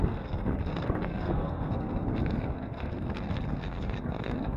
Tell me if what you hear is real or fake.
fake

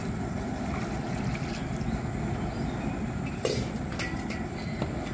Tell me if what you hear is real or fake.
real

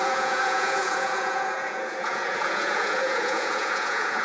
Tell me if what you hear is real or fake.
fake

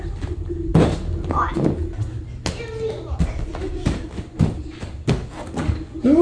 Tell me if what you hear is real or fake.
real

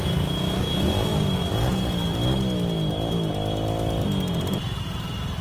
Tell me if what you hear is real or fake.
real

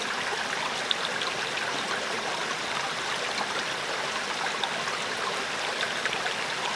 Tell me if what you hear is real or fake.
real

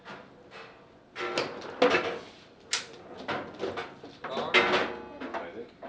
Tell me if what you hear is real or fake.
real